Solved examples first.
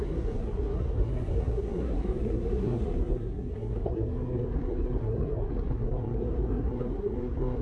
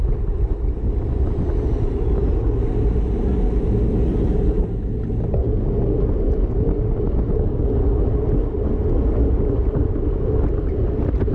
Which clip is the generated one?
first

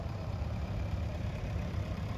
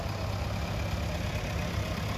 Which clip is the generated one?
first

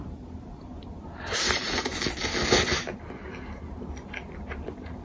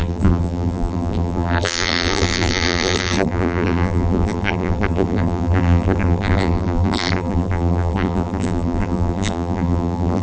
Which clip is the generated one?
second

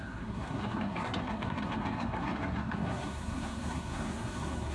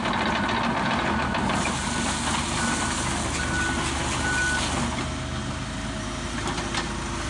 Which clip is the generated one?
first